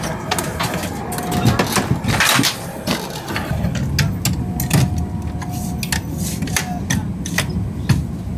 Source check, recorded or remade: recorded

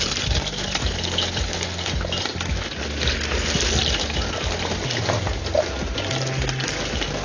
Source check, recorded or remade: recorded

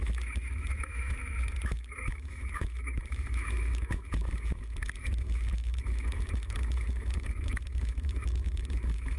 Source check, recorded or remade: remade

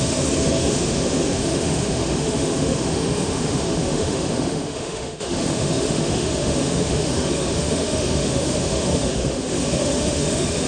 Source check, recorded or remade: remade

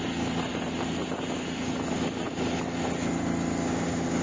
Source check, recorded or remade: recorded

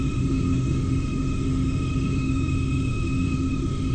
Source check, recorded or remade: remade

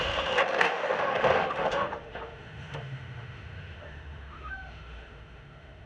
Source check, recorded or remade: remade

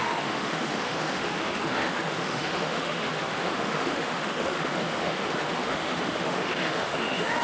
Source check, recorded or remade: remade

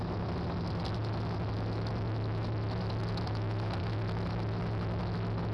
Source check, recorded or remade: recorded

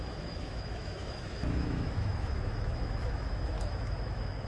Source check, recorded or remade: remade